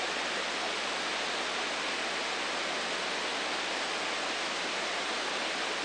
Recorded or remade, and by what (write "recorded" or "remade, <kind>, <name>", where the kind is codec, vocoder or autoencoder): recorded